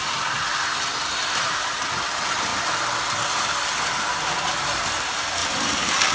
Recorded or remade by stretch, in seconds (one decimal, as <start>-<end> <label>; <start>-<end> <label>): 0.0-6.1 recorded